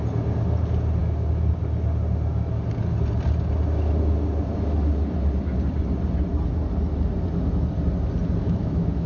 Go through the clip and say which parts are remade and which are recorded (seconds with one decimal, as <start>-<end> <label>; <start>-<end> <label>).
0.0-8.4 recorded; 8.4-9.1 remade